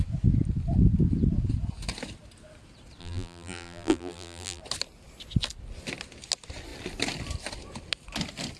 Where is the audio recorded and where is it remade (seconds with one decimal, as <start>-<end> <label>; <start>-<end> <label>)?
0.0-3.0 recorded; 3.0-4.6 remade; 4.6-8.6 recorded